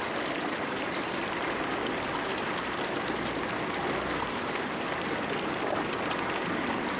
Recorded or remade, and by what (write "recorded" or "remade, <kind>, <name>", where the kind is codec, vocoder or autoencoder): recorded